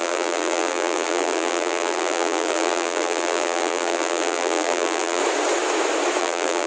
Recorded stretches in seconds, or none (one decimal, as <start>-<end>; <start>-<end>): 5.2-6.2